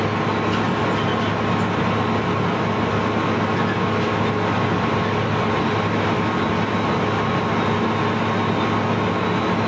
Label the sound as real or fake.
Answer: real